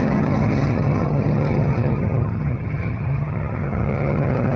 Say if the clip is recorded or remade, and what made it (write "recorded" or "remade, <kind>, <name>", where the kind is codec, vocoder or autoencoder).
remade, vocoder, HiFi-GAN